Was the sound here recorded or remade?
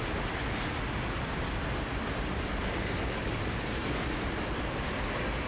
recorded